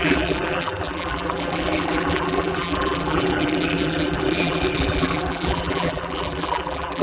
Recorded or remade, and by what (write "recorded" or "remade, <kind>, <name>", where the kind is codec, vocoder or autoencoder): remade, vocoder, BigVGAN v2